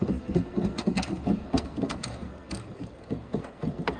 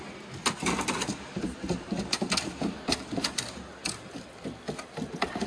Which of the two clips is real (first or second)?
second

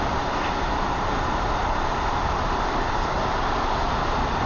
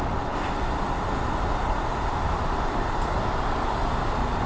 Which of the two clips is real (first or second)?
second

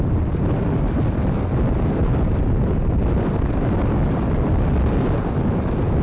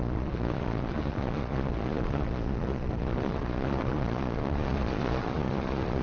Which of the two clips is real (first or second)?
first